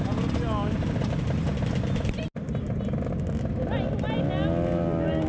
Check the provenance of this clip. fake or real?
real